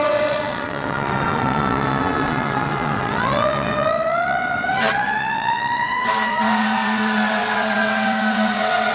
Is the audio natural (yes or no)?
no